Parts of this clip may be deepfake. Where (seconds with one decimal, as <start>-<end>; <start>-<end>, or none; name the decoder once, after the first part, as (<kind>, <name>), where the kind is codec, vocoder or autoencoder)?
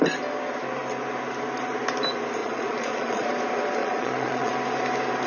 2.4-3.3 (vocoder, Vocos); 3.8-4.5